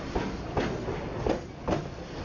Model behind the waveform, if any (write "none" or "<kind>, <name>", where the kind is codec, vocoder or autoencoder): none